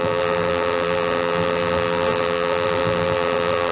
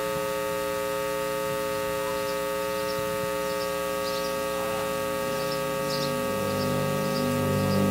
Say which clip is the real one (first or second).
second